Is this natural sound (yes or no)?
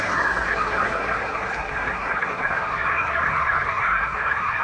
no